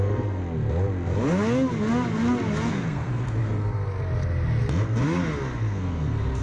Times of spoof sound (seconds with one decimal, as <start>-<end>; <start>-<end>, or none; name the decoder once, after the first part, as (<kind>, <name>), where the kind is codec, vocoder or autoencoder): 0.0-0.4 (codec, SNAC); 2.7-3.4; 5.6-6.4